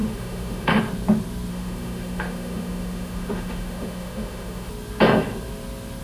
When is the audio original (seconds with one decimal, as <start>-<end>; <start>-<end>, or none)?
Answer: 0.8-1.5; 4.7-6.0